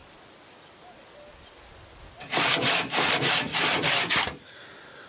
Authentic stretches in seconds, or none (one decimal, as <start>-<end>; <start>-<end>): 0.0-5.1